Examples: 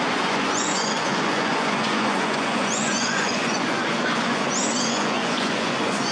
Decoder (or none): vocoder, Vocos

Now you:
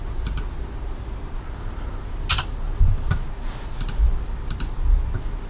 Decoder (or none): none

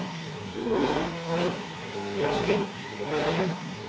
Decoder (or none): codec, SNAC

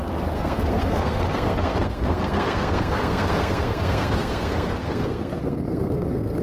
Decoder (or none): codec, SNAC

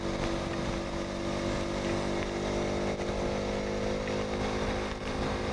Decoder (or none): none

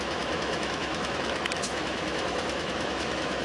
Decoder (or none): autoencoder, DAC-VAE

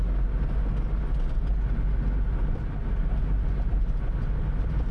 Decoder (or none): none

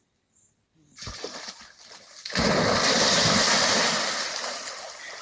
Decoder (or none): none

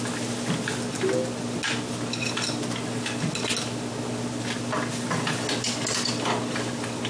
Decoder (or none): none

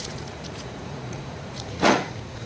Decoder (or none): vocoder, Vocos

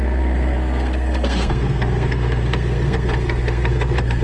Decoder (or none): codec, SNAC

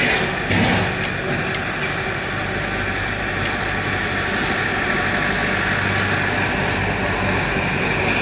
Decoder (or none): none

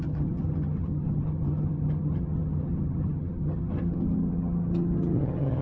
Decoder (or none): vocoder, HiFi-GAN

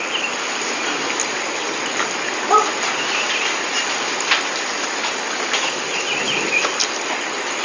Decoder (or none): none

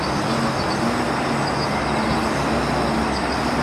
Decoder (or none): none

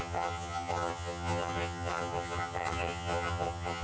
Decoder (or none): vocoder, HiFi-GAN